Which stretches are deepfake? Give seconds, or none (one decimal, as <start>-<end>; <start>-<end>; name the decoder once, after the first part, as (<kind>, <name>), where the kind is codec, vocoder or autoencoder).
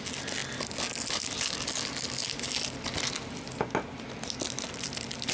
none